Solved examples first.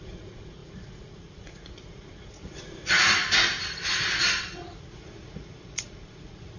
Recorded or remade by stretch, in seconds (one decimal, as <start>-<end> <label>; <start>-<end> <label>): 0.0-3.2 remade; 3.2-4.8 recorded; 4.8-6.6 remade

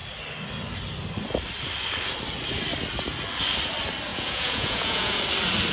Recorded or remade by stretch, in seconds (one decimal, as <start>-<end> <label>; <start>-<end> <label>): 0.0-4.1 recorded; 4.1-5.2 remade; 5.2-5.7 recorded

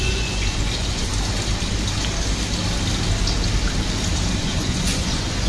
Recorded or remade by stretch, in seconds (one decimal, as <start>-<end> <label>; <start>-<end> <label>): 0.0-1.1 remade; 1.1-4.4 recorded; 4.4-5.5 remade